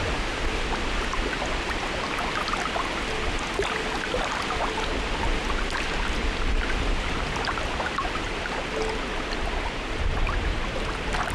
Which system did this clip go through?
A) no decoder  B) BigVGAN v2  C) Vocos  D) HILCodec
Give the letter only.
A